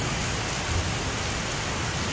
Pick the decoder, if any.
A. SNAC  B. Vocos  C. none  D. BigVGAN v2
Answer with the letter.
C